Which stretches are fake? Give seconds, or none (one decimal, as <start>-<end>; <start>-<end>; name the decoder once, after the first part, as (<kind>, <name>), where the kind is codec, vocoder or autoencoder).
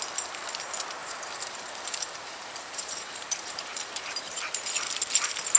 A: 1.0-4.4 (vocoder, BigVGAN v2)